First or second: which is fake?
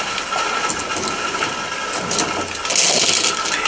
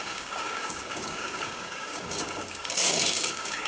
second